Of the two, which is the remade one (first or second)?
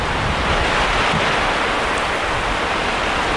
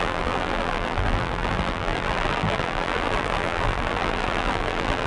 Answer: second